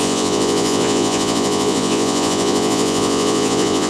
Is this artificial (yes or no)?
yes